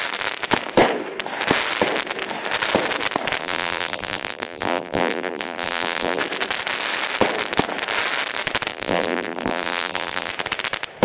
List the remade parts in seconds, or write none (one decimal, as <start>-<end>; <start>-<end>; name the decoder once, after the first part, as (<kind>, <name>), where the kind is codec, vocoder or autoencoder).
3.4-6.2 (vocoder, BigVGAN v2); 8.7-10.3